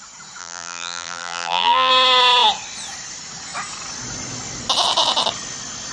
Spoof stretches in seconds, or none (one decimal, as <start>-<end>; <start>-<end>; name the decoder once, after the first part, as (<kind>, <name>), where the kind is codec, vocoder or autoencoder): 0.4-1.9 (vocoder, BigVGAN v2)